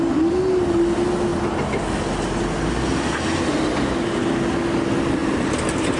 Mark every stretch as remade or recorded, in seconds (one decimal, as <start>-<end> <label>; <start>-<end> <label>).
0.0-5.2 recorded; 5.2-6.0 remade